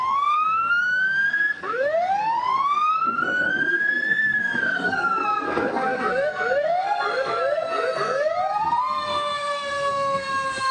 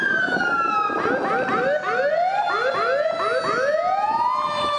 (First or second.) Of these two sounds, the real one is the second